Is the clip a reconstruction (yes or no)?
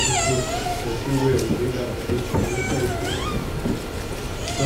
no